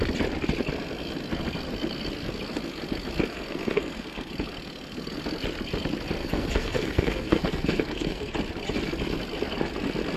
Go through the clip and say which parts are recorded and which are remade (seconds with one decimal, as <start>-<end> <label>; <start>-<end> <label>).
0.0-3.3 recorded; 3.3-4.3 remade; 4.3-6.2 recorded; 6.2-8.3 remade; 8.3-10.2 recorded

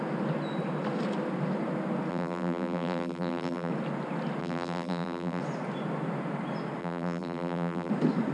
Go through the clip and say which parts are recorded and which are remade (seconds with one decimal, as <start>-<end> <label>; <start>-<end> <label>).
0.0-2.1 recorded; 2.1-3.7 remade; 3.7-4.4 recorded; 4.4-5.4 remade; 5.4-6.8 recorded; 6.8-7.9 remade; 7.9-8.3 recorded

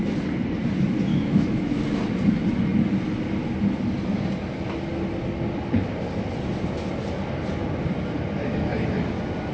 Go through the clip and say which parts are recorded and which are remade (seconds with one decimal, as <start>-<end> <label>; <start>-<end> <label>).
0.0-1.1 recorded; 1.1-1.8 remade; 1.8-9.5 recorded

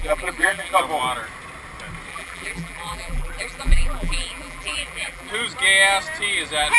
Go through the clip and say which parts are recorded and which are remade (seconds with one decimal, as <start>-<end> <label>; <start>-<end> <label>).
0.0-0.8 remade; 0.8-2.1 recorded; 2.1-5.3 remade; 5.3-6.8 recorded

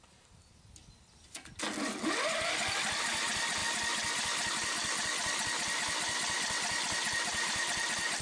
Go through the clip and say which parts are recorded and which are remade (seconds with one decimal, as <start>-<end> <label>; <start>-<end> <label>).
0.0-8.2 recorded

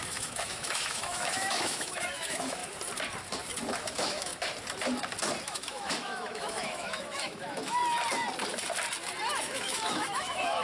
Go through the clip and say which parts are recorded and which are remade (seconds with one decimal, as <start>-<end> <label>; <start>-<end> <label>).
0.0-2.6 remade; 2.6-3.7 recorded; 3.7-4.3 remade; 4.3-5.4 recorded; 5.4-7.8 remade; 7.8-9.4 recorded; 9.4-10.6 remade

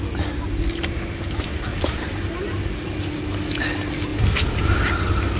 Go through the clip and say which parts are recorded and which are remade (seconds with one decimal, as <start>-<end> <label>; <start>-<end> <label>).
0.0-1.7 recorded; 1.7-2.4 remade; 2.4-4.1 recorded; 4.1-5.4 remade

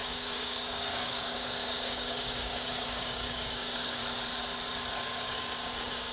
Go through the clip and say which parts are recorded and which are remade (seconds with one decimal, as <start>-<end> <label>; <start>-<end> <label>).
0.0-4.0 remade; 4.0-4.9 recorded; 4.9-6.1 remade